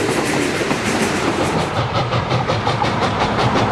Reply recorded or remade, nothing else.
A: remade